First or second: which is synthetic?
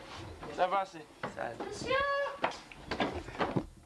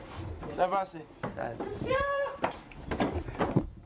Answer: second